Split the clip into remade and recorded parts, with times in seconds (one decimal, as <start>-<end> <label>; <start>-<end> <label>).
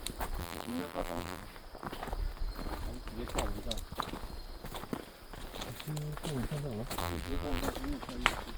0.0-0.4 recorded; 0.4-1.4 remade; 1.4-7.0 recorded; 7.0-7.6 remade; 7.6-8.6 recorded